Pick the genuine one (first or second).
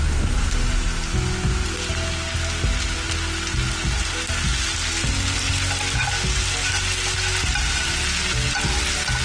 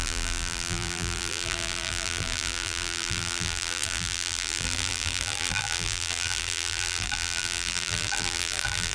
first